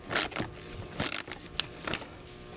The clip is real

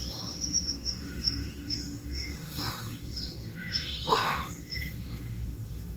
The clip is fake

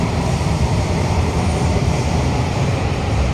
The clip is fake